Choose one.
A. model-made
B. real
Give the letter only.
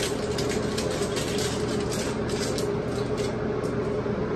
B